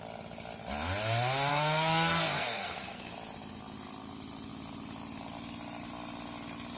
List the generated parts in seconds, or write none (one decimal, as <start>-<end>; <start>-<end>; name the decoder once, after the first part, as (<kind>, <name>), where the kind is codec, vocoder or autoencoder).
1.5-3.1 (codec, SNAC)